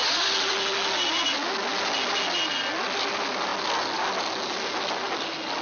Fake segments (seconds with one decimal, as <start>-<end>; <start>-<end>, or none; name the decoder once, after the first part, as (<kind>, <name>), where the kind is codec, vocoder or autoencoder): none